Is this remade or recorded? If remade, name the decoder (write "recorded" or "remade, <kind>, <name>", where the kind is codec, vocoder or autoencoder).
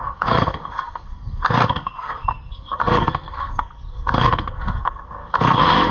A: remade, codec, SNAC